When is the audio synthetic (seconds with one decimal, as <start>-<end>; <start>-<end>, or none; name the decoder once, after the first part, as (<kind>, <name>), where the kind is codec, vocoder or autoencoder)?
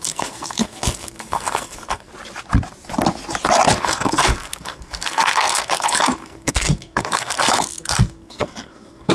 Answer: 0.0-2.1 (codec, SNAC); 3.8-9.1